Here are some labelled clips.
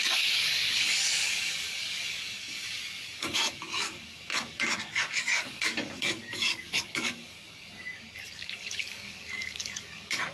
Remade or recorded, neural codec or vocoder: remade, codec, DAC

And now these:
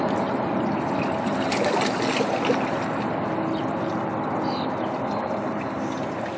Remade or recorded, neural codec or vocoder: recorded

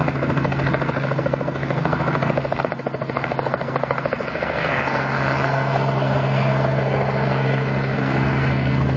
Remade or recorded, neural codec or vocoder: remade, codec, SNAC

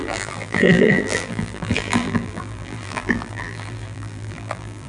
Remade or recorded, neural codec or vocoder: remade, vocoder, BigVGAN v2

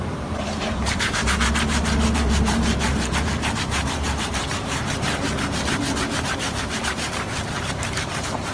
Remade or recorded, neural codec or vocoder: remade, vocoder, BigVGAN v2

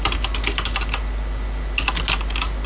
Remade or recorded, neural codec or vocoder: recorded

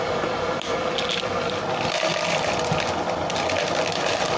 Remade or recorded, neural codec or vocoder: recorded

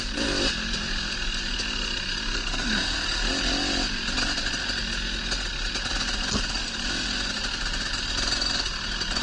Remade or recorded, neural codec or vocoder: recorded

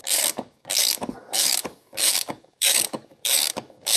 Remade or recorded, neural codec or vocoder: remade, codec, DAC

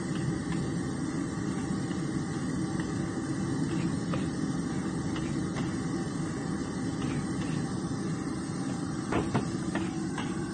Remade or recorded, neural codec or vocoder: recorded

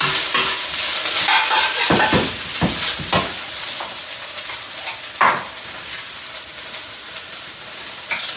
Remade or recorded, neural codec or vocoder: recorded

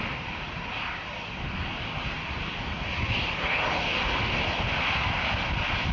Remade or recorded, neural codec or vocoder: recorded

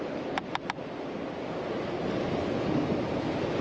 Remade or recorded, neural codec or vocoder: recorded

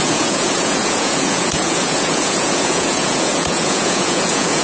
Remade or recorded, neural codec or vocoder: remade, vocoder, Vocos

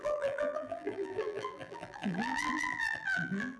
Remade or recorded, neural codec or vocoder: remade, vocoder, BigVGAN v2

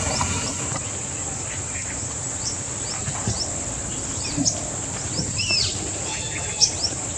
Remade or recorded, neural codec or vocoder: recorded